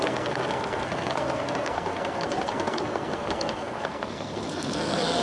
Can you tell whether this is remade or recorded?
remade